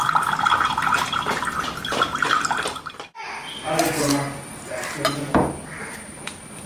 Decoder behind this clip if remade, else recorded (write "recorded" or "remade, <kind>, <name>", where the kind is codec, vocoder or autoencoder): recorded